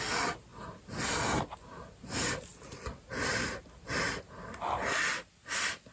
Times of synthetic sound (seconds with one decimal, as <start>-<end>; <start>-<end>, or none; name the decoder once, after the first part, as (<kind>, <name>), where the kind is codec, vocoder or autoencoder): none